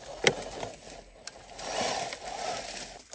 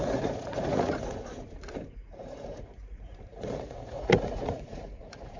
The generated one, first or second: second